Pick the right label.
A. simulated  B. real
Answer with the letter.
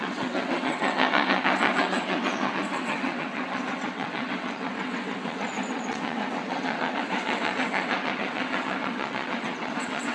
A